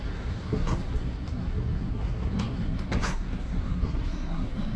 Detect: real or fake fake